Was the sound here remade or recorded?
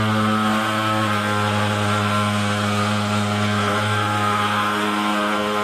recorded